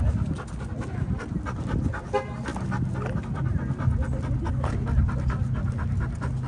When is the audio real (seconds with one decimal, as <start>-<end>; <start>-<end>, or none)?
0.0-6.5